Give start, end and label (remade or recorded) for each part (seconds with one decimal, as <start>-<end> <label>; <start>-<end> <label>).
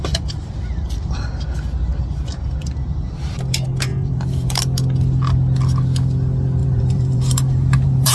0.0-3.9 recorded; 3.9-4.6 remade; 4.6-6.6 recorded; 6.6-8.1 remade